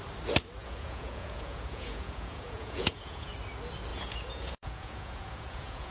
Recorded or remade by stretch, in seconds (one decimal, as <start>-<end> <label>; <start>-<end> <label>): 0.0-0.6 recorded; 0.6-3.3 remade; 3.3-3.9 recorded; 3.9-5.9 remade